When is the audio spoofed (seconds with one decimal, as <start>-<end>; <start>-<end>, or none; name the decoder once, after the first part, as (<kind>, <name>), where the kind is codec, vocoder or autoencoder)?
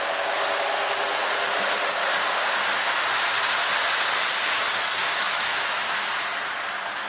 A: 5.0-6.1 (autoencoder, DAC-VAE)